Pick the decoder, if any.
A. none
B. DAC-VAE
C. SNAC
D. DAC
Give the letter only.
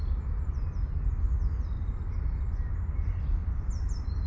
A